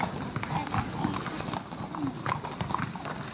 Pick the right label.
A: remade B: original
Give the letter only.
B